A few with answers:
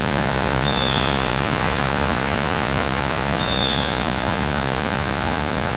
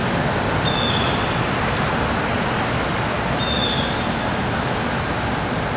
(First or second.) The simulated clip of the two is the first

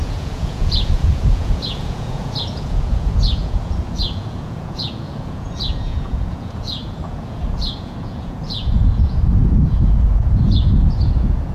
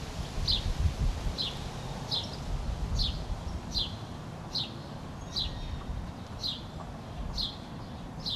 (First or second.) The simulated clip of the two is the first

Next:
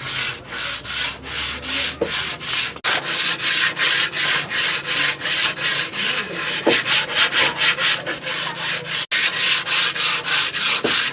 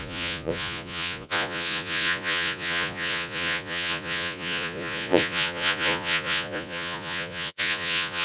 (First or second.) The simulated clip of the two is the second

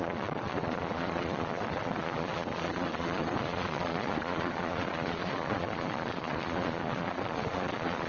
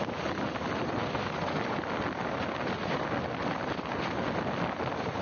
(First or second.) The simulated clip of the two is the first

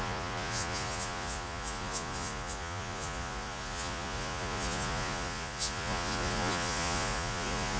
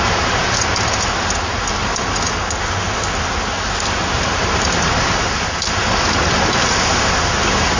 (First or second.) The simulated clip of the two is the first